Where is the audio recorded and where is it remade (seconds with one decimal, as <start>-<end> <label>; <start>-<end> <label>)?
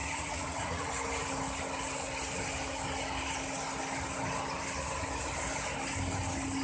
0.0-0.9 remade; 0.9-6.6 recorded